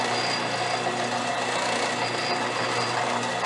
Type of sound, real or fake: real